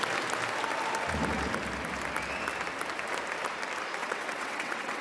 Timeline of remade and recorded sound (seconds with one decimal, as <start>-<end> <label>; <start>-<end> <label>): 0.0-4.0 recorded; 4.0-5.0 remade